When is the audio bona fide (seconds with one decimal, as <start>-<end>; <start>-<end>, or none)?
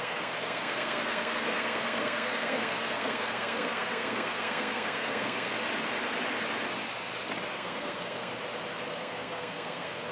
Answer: 5.5-7.5; 8.3-8.9